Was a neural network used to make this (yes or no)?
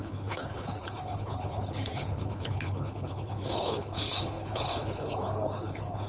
yes